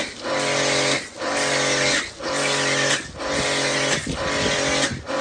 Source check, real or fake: real